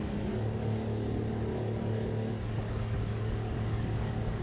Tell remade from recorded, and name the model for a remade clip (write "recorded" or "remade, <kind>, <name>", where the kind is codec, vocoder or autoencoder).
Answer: remade, codec, DAC